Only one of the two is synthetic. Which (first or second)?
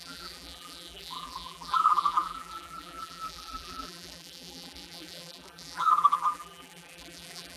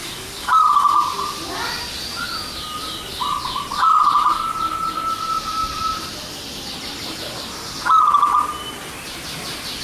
first